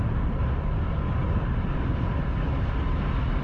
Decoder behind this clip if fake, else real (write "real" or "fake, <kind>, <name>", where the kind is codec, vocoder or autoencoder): real